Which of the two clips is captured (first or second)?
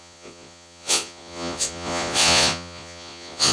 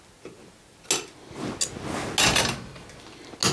second